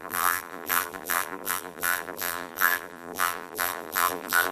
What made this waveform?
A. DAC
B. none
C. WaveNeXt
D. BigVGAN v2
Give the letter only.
D